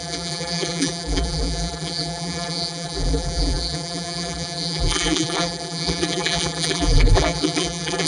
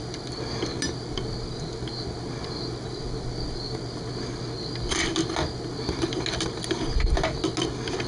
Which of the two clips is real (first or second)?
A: second